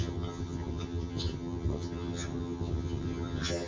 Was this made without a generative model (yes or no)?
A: no